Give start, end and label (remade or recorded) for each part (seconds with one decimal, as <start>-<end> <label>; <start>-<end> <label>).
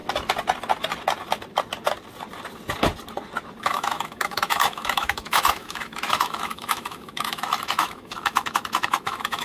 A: 0.0-3.6 recorded; 3.6-9.4 remade